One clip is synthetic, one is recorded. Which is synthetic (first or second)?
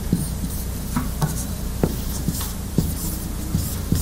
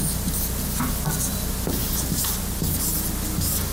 first